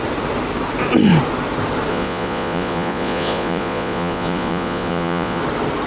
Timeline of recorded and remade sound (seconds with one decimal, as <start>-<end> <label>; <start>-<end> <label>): 0.0-1.9 recorded; 1.9-5.4 remade; 5.4-5.9 recorded